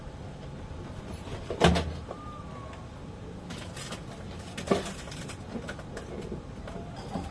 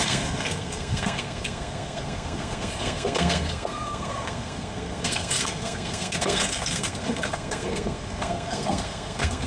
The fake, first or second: second